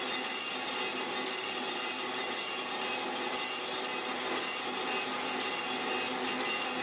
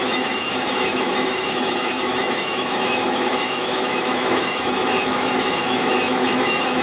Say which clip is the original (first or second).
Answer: first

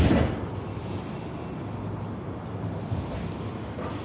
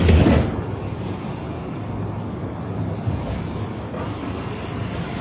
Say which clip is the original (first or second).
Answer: first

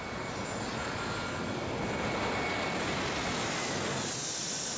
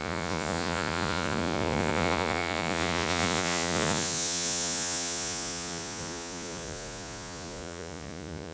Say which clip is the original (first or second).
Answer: first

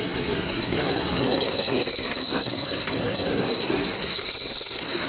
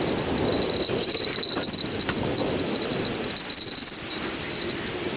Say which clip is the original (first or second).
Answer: second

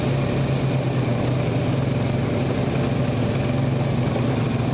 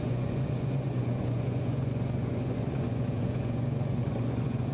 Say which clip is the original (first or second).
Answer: first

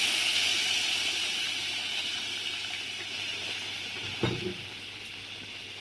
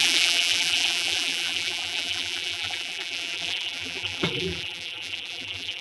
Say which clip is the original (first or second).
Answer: first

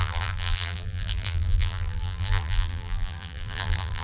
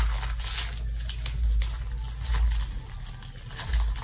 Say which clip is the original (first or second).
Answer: second